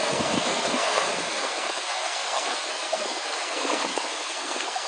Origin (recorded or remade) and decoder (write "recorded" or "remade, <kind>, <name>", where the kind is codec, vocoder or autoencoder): remade, codec, SNAC